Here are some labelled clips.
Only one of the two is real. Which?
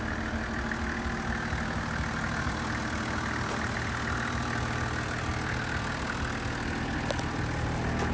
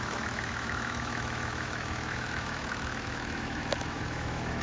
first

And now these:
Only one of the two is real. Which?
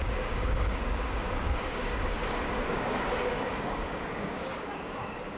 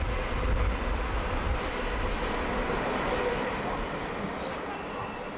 second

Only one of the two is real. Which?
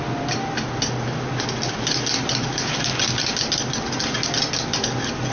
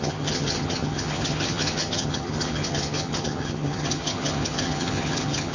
first